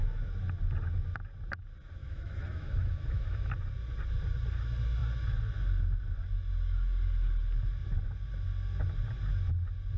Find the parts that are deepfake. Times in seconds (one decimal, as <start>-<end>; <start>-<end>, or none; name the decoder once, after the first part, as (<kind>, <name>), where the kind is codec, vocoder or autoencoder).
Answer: 2.0-3.5 (autoencoder, DAC-VAE)